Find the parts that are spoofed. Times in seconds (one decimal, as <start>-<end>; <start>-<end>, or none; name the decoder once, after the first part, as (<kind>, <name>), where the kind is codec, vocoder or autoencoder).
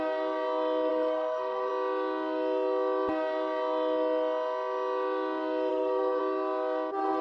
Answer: 0.9-1.7 (codec, SNAC); 5.7-6.2